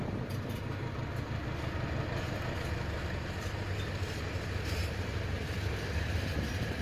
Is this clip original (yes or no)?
yes